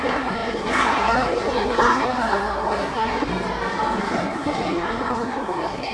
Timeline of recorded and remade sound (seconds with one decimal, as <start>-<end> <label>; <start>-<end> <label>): 0.0-3.3 remade; 3.3-4.0 recorded; 4.0-5.9 remade